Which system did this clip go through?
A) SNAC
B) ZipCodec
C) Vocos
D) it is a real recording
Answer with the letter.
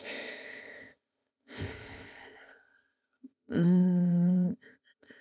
B